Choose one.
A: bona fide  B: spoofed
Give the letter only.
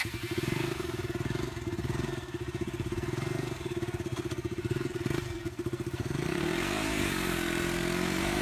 B